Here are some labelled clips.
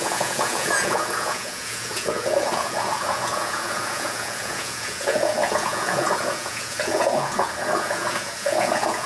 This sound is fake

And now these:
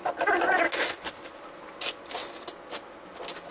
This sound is real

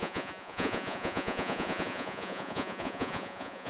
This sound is fake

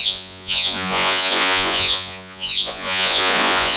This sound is fake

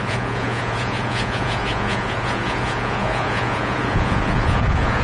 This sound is fake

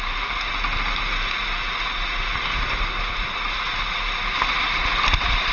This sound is real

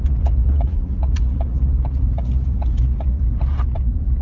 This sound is fake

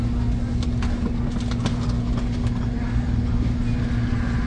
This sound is real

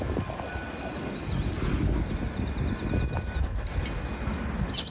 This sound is real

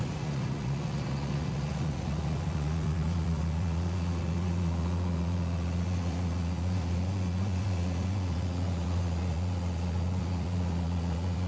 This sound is fake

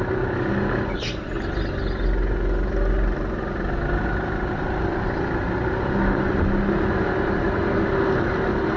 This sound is real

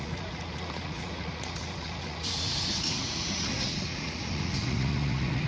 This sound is fake